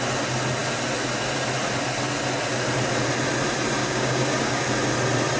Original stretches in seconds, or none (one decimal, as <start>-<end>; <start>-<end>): 0.0-3.8; 4.6-5.4